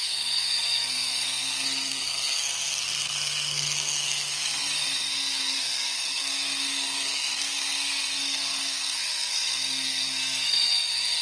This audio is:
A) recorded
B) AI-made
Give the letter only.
B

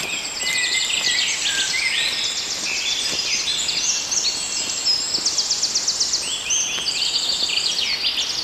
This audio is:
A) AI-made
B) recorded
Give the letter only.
B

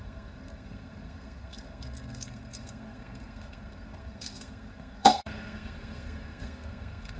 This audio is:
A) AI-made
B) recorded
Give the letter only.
A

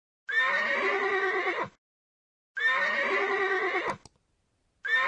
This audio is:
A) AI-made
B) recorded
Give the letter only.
B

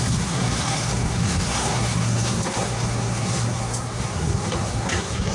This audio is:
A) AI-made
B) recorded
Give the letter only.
A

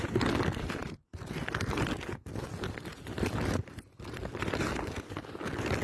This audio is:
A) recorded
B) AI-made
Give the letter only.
A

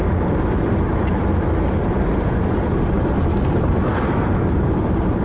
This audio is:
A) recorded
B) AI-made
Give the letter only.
A